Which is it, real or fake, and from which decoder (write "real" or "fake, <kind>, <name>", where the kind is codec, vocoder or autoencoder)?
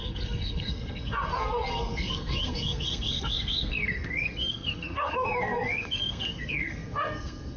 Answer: fake, codec, SNAC